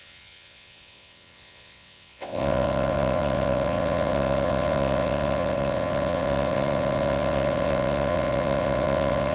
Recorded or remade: remade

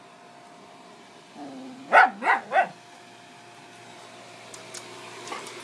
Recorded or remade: recorded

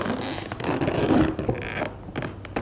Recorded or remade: recorded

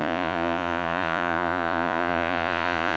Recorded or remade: remade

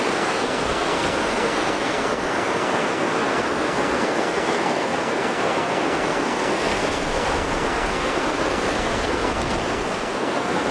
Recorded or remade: remade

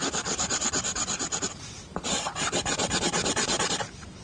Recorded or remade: recorded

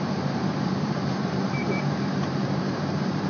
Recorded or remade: remade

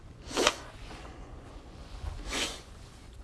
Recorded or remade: remade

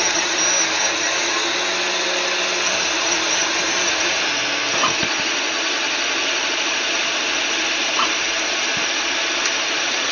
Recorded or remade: recorded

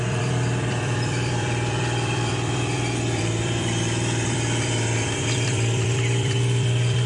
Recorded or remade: remade